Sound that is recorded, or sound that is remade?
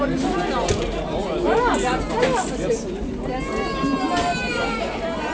recorded